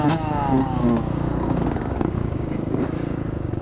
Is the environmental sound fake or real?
fake